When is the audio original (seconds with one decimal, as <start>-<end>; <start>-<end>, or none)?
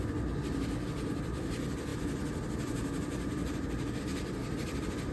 0.0-5.1